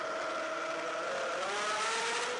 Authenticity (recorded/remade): recorded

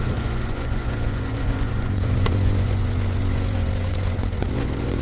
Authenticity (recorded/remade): remade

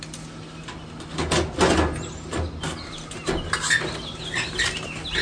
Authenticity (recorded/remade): recorded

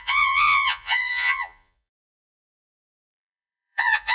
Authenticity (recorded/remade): remade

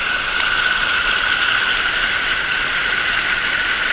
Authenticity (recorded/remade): recorded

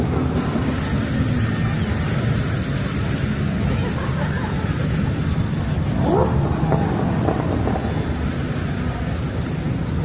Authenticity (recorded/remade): recorded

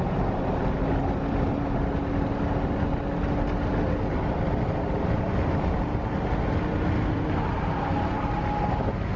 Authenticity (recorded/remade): recorded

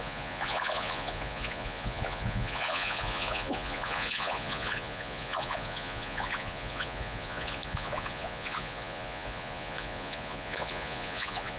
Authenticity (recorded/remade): remade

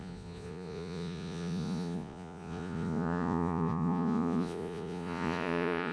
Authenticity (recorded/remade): remade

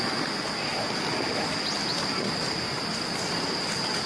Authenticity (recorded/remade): recorded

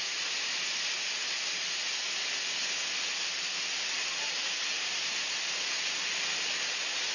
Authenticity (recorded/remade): recorded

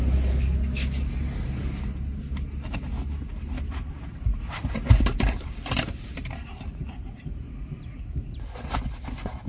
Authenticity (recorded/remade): recorded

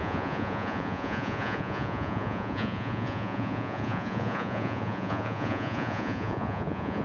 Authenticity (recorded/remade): remade